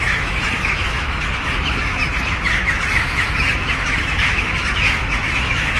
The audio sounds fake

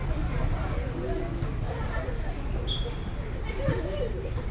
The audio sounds real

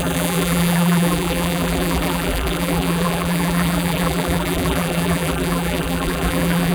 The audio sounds fake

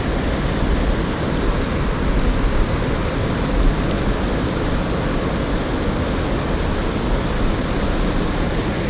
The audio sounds real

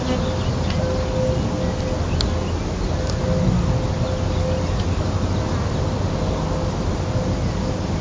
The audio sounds real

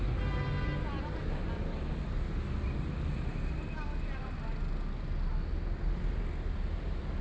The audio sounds real